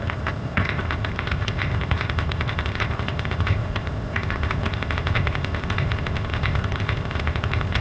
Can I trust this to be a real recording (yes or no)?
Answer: no